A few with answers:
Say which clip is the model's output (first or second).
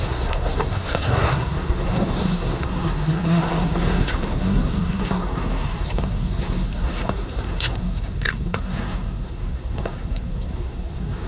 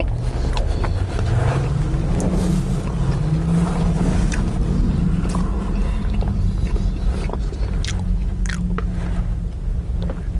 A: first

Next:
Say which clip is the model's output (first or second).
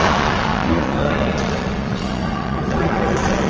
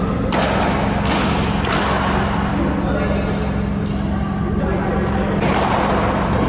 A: first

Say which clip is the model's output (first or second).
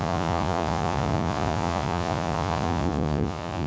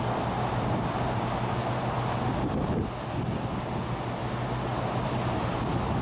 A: first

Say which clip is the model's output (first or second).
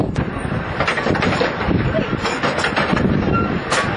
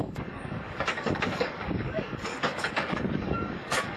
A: second